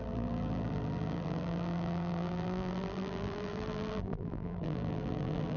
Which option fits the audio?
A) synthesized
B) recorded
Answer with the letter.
A